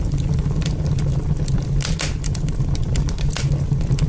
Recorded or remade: recorded